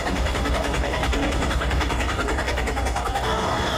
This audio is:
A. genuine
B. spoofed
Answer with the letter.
B